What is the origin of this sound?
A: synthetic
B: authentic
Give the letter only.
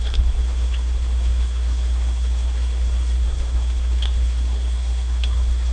A